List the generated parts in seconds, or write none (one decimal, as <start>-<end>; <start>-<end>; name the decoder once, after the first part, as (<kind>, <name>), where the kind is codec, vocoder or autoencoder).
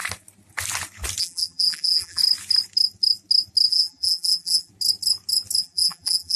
1.2-2.2 (vocoder, BigVGAN v2); 3.7-4.7; 5.6-6.4